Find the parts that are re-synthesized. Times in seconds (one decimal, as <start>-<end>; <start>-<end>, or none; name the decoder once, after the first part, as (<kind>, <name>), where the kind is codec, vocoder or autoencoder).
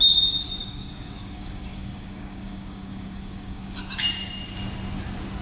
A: 0.6-3.8 (codec, DAC)